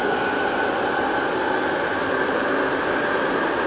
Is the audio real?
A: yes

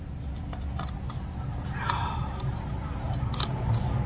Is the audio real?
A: yes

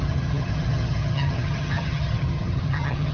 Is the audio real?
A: no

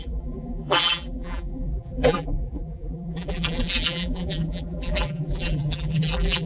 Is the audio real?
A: no